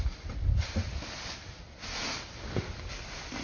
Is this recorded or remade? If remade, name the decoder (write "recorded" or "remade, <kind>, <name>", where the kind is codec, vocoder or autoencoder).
recorded